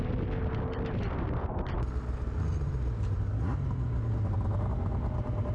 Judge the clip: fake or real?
real